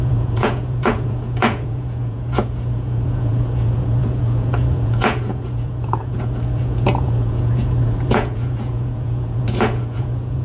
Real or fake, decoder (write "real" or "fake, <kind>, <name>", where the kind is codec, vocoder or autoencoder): fake, vocoder, Vocos